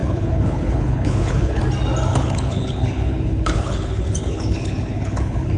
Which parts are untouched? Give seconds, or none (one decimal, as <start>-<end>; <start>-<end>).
1.6-2.1